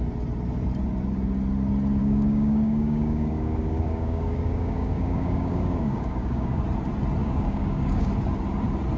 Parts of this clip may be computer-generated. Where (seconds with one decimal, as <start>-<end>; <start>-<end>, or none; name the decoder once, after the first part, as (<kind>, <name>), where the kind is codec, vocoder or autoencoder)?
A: 2.0-6.6 (codec, DAC); 7.2-8.1